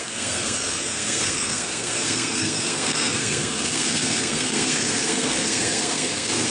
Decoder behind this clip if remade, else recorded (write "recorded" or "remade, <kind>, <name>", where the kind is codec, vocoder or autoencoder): remade, codec, SNAC